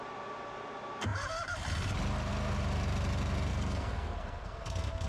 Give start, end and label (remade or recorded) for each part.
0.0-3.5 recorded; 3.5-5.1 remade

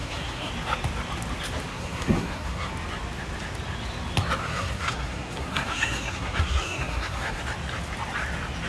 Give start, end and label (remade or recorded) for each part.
0.0-0.5 remade; 0.5-1.7 recorded; 1.7-2.7 remade; 2.7-4.4 recorded; 4.4-7.4 remade; 7.4-8.7 recorded

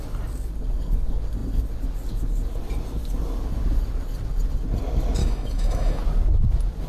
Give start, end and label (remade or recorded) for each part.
0.0-5.2 recorded; 5.2-6.0 remade; 6.0-6.9 recorded

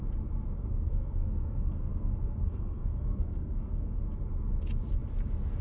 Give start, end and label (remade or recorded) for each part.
0.0-0.6 recorded; 0.6-4.0 remade; 4.0-5.6 recorded